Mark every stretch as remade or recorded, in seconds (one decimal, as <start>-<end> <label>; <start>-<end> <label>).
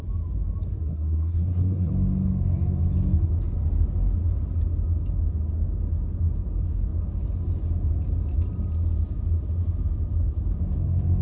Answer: 0.0-0.7 recorded; 0.7-1.9 remade; 1.9-11.2 recorded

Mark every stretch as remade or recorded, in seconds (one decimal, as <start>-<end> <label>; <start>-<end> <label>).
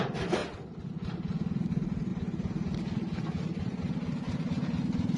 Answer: 0.0-5.2 recorded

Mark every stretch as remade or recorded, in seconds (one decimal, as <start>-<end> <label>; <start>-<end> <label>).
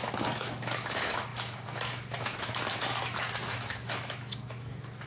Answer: 0.0-5.1 remade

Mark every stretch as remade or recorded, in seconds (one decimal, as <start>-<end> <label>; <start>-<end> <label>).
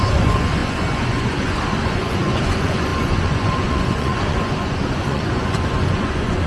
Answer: 0.0-6.5 remade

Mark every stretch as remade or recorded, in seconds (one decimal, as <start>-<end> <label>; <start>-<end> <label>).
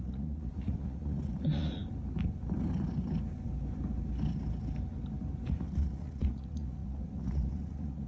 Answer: 0.0-1.8 remade; 1.8-5.5 recorded; 5.5-8.1 remade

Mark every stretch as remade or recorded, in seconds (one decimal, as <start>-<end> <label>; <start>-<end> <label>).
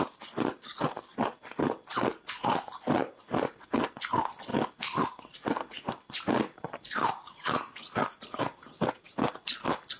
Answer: 0.0-4.5 recorded; 4.5-9.1 remade; 9.1-10.0 recorded